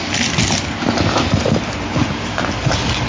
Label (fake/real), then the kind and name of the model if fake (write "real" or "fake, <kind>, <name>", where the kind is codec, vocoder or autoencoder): real